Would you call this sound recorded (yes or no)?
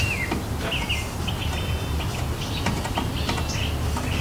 yes